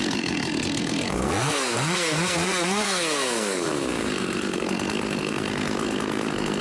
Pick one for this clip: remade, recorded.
remade